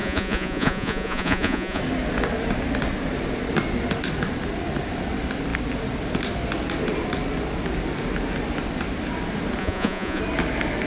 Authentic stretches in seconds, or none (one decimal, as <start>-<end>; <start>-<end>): 1.8-9.6; 10.2-10.9